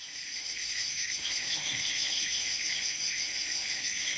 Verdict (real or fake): fake